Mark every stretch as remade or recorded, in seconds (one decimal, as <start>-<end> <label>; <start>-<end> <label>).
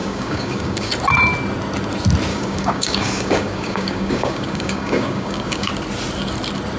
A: 0.0-0.9 remade; 0.9-2.3 recorded; 2.3-5.7 remade; 5.7-6.8 recorded